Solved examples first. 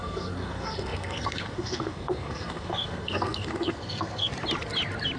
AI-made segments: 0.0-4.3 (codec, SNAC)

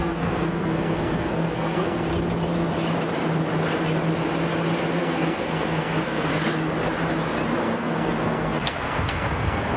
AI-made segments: 0.0-2.1 (codec, SNAC); 5.0-6.3; 7.6-9.8

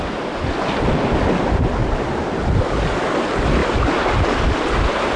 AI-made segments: 1.8-2.4 (vocoder, BigVGAN v2)